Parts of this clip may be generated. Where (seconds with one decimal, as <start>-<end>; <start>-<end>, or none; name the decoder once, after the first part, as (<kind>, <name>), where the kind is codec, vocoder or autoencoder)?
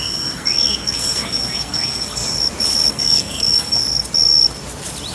0.0-2.2 (codec, SNAC); 2.9-3.8